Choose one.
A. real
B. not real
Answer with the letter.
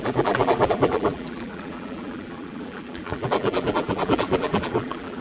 B